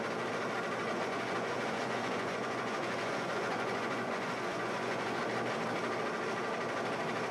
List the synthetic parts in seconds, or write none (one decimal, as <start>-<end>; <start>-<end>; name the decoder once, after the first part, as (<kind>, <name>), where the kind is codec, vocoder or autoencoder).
0.8-5.2 (vocoder, Vocos)